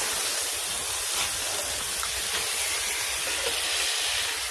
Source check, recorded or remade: recorded